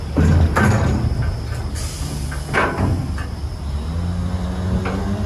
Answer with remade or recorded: recorded